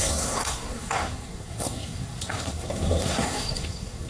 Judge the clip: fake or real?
fake